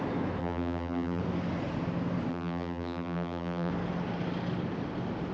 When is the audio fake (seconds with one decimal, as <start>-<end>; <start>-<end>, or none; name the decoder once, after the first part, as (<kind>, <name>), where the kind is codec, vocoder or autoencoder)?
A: 0.4-1.2 (vocoder, BigVGAN v2); 2.3-3.7